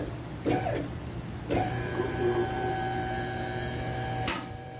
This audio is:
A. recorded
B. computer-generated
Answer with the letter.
B